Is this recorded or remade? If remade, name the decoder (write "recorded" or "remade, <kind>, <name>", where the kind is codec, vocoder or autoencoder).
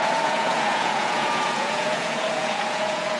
remade, vocoder, Vocos